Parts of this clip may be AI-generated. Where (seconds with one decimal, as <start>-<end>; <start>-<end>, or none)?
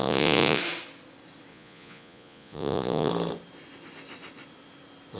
0.0-0.6; 1.5-3.1